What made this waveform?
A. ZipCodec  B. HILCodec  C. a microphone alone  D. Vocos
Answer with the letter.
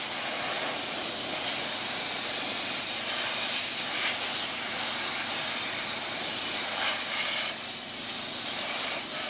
C